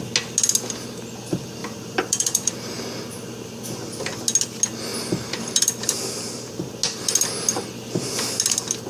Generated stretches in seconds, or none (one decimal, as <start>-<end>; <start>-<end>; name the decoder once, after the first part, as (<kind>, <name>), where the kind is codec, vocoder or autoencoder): 1.6-2.5 (vocoder, BigVGAN v2); 4.9-6.7